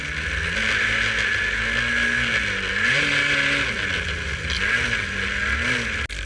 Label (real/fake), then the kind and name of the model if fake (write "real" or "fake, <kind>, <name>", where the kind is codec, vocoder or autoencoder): real